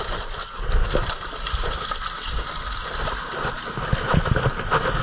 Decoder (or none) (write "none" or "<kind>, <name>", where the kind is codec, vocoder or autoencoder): none